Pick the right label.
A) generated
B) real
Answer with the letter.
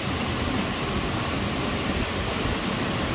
B